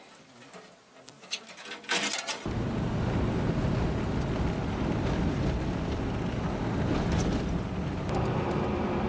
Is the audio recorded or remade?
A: recorded